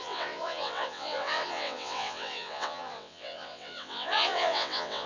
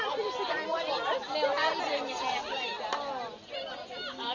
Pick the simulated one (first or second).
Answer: first